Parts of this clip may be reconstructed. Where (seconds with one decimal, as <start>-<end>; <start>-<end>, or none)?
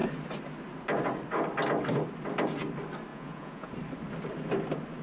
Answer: 3.1-3.7